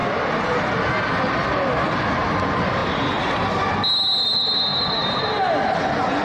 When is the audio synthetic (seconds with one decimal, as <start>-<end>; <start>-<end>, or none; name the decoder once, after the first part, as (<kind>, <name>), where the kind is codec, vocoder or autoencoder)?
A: none